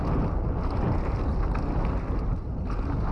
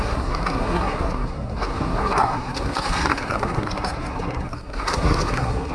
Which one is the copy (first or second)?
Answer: second